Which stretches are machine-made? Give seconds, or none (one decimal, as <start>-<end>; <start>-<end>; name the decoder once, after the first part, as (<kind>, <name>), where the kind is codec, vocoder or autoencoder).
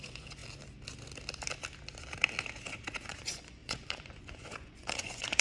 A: 0.0-0.4 (vocoder, Vocos); 3.1-5.4